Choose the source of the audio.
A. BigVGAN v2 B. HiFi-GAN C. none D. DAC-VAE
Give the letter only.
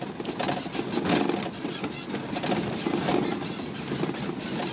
C